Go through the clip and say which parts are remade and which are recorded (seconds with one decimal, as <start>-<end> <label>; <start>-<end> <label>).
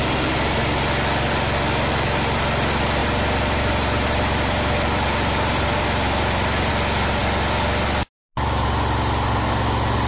0.0-3.0 recorded; 3.0-6.7 remade; 6.7-10.1 recorded